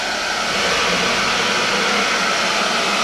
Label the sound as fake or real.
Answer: real